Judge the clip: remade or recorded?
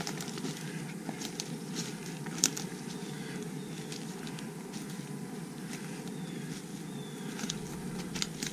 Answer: recorded